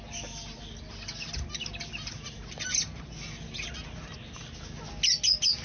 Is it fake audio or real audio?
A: real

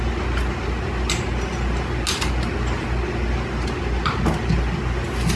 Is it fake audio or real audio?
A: real